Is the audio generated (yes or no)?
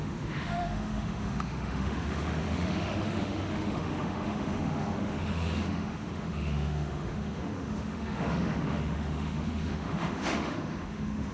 yes